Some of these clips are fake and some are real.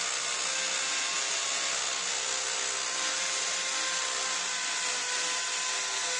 real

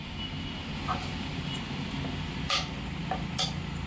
real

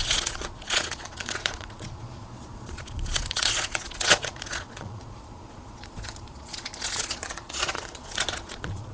fake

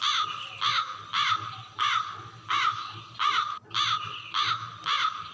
real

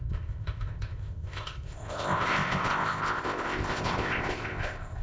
fake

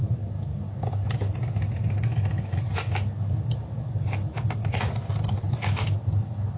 real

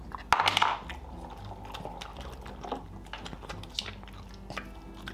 real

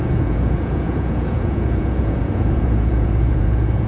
fake